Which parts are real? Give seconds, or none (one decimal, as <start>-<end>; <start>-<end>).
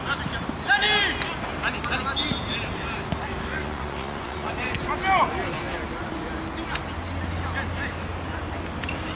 0.0-3.5; 4.9-9.2